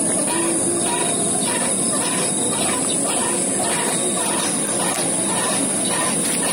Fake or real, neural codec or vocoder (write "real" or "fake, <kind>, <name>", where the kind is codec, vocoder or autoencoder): real